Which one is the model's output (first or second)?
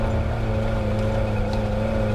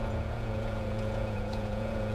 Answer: second